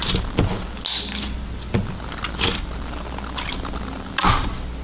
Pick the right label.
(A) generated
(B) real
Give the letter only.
B